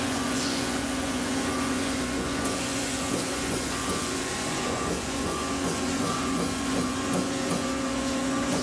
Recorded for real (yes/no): no